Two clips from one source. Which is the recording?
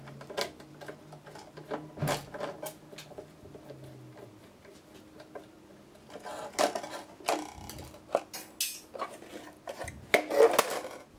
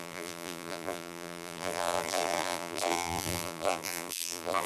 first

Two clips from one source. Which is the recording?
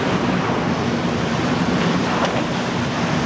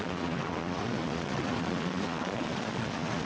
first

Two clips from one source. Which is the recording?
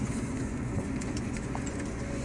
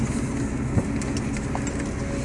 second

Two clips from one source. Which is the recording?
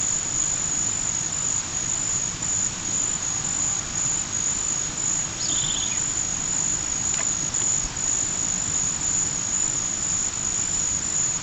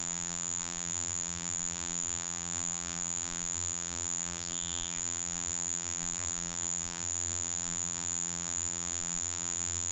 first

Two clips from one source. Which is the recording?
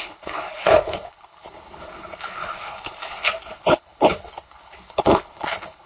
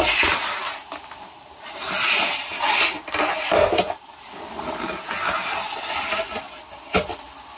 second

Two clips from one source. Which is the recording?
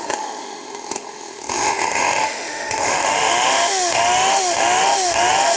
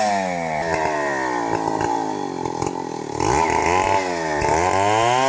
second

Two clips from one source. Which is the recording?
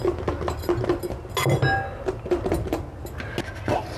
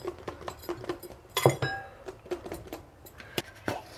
first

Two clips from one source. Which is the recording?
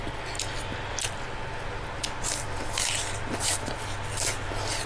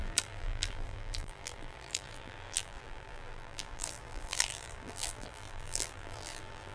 first